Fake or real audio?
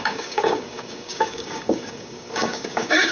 fake